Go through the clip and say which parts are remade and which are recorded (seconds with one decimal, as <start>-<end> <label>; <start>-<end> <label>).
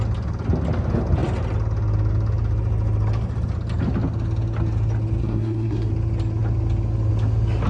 0.0-5.2 recorded; 5.2-5.9 remade; 5.9-7.7 recorded